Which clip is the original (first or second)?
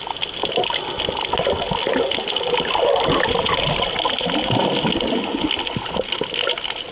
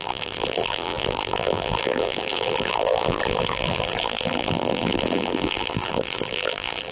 first